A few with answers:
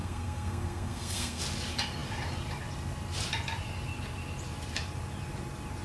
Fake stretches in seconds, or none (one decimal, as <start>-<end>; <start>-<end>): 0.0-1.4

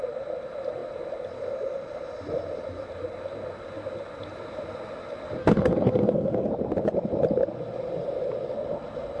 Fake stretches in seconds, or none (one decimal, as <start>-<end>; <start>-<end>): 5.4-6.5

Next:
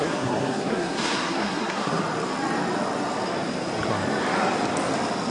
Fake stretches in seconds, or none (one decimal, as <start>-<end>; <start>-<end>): 0.0-2.0

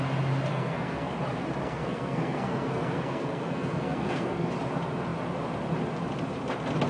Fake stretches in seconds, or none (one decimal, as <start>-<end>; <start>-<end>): 0.5-1.1; 1.6-4.5

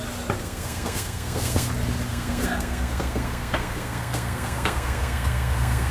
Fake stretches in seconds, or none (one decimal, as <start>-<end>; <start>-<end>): 0.4-1.7; 2.1-5.9